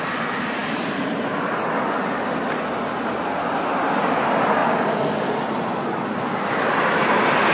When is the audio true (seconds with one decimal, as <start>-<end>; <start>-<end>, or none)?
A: 0.0-7.5